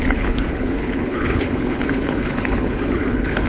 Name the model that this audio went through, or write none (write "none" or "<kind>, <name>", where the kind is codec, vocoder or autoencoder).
codec, HILCodec